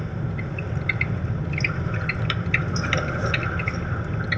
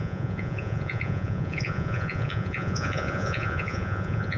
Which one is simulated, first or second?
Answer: second